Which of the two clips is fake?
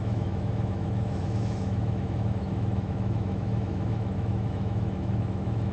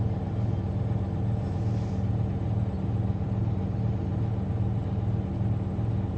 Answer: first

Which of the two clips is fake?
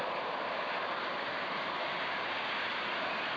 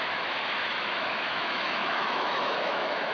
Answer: second